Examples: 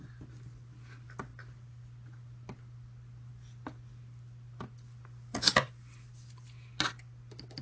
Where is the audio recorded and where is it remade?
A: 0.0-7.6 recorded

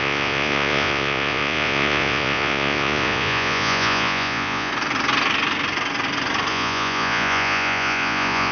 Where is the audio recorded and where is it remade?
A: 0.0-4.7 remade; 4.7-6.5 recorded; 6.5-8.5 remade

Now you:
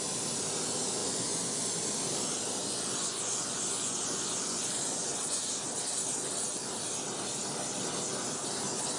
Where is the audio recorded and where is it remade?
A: 0.0-1.0 recorded; 1.0-1.8 remade; 1.8-2.6 recorded; 2.6-5.5 remade; 5.5-9.0 recorded

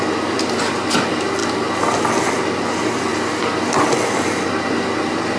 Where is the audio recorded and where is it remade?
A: 0.0-5.4 recorded